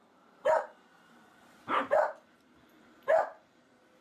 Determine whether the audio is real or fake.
fake